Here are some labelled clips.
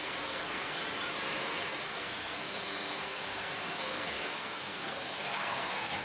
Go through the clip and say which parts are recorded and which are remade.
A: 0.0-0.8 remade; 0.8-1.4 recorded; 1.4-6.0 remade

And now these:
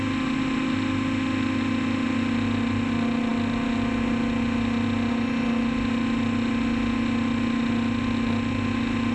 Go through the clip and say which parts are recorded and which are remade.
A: 0.0-9.1 recorded